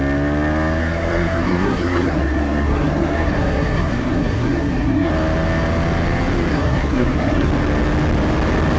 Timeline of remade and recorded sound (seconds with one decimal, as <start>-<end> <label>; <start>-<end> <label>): 0.0-0.8 recorded; 0.8-5.1 remade; 5.1-6.5 recorded; 6.5-7.5 remade; 7.5-8.8 recorded

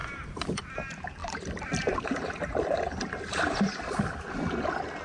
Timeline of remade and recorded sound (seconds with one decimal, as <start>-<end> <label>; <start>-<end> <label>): 0.0-0.6 remade; 0.6-1.2 recorded; 1.2-4.2 remade; 4.2-5.0 recorded

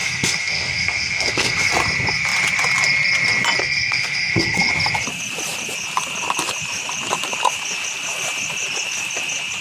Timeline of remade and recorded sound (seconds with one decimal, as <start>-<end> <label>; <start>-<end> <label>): 0.0-1.7 remade; 1.7-3.6 recorded; 3.6-4.7 remade; 4.7-9.6 recorded

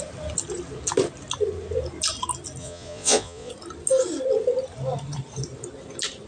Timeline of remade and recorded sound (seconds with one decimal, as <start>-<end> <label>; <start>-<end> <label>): 0.0-2.6 recorded; 2.6-3.5 remade; 3.5-6.3 recorded

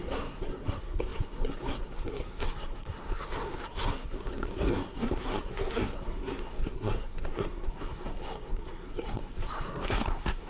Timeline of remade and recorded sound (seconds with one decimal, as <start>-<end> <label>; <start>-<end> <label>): 0.0-10.5 remade